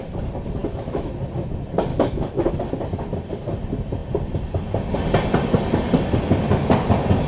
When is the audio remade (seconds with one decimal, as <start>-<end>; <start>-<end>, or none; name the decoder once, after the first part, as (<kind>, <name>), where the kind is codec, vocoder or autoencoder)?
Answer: 0.6-1.1 (autoencoder, DAC-VAE); 1.9-2.5